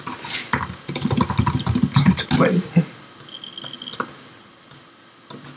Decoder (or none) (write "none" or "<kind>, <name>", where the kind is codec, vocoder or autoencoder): none